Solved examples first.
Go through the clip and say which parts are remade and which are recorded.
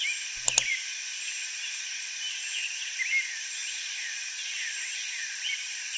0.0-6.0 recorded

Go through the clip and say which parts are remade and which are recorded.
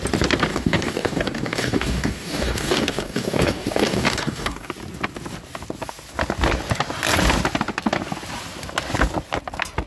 0.0-0.5 recorded; 0.5-4.7 remade; 4.7-9.9 recorded